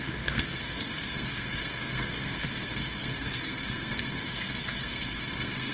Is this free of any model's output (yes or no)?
no